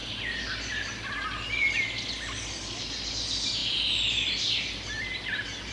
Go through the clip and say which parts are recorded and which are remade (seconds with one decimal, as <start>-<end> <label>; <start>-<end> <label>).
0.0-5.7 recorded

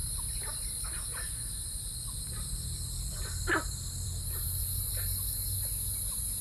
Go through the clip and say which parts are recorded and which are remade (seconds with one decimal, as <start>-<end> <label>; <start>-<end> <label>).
0.0-1.1 recorded; 1.1-4.9 remade; 4.9-6.4 recorded

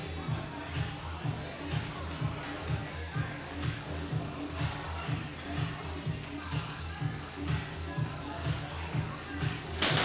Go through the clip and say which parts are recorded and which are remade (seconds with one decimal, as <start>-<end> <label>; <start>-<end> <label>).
0.0-2.8 recorded; 2.8-5.3 remade; 5.3-6.1 recorded; 6.1-10.0 remade

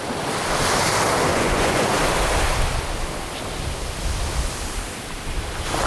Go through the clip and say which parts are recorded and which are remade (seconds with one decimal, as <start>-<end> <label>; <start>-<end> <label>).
0.0-1.3 recorded; 1.3-1.9 remade; 1.9-5.9 recorded